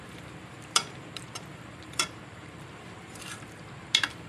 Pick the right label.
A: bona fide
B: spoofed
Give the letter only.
B